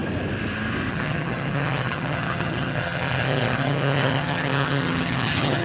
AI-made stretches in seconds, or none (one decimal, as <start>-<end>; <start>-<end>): 0.9-5.6